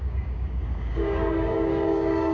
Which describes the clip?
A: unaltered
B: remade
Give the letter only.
B